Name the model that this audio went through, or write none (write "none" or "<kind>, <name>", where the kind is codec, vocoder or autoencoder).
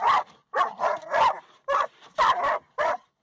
none